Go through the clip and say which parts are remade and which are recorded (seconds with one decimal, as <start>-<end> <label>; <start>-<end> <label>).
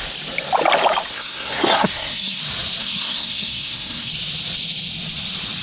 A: 0.0-1.1 recorded; 1.1-2.4 remade; 2.4-2.8 recorded; 2.8-4.1 remade; 4.1-5.6 recorded